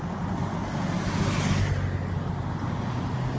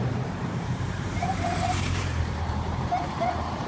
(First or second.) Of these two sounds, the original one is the first